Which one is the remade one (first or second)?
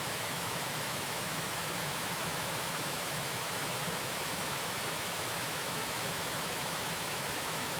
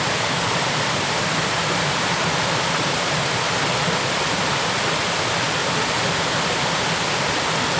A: first